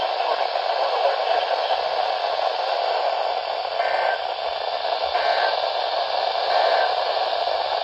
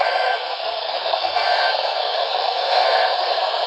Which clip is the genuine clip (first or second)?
first